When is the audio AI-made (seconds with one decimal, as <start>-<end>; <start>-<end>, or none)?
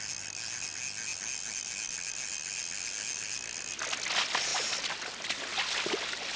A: none